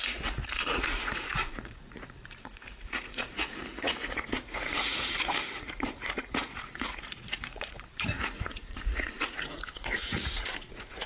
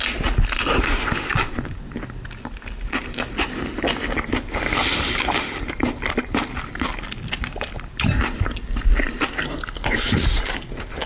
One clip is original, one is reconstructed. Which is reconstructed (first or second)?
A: first